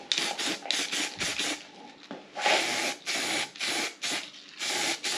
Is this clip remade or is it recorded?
recorded